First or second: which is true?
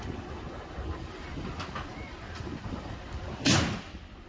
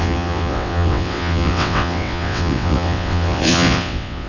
first